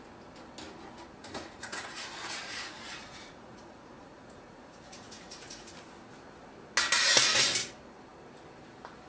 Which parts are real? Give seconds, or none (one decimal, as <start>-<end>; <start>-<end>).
0.0-1.2; 5.7-9.1